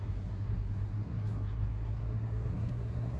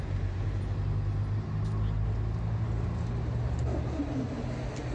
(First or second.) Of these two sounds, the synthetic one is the first